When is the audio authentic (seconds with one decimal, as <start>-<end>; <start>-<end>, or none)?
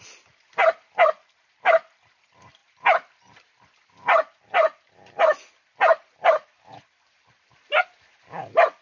0.0-8.8